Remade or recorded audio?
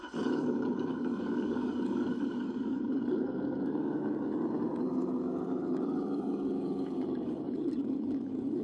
remade